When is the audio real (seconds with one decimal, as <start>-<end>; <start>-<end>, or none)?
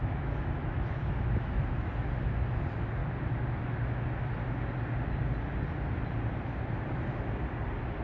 1.9-8.0